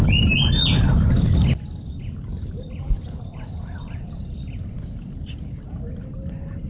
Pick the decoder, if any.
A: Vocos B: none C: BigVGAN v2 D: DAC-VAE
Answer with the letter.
B